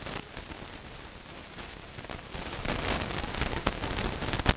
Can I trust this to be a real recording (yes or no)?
yes